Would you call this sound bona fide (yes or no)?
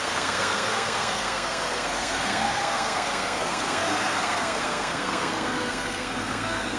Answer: no